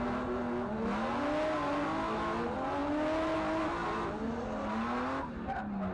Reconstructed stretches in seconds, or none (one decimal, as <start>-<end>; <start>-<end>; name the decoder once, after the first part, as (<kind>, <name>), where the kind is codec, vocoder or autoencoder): none